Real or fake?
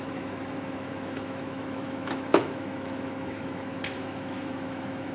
fake